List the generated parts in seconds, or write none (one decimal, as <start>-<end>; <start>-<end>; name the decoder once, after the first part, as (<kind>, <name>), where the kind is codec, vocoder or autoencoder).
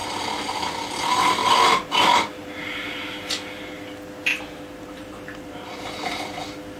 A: 1.4-3.3 (vocoder, BigVGAN v2); 4.3-5.8